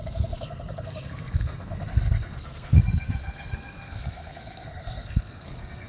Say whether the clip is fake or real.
fake